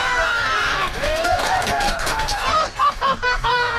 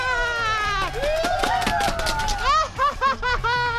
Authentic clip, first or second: second